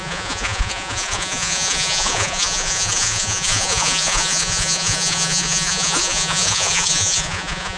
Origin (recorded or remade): remade